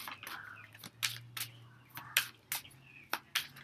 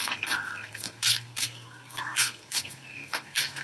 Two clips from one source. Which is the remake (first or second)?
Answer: second